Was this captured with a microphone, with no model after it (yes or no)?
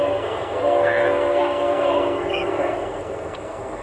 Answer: no